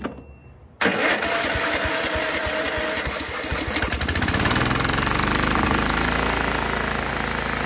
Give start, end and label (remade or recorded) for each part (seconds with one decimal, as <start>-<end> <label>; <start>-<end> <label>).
0.0-7.7 recorded